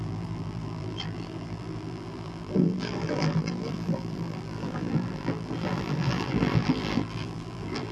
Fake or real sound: fake